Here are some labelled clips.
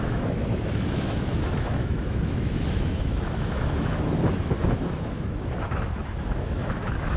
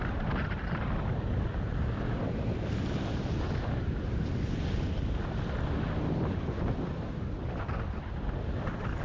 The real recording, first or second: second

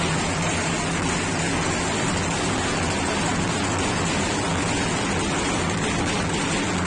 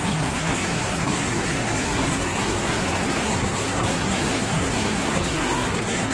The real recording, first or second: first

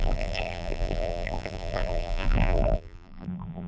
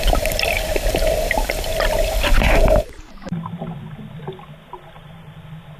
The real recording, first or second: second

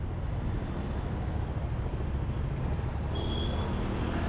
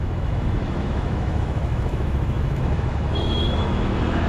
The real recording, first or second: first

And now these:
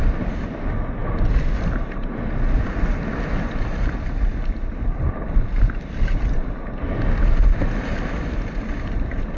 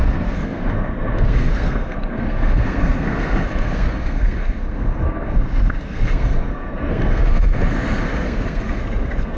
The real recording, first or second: first